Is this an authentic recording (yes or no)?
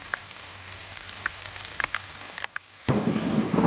no